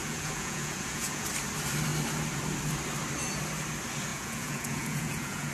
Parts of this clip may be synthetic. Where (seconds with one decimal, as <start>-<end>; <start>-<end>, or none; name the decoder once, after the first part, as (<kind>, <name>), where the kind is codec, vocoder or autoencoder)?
0.0-1.3 (vocoder, Vocos); 4.1-5.5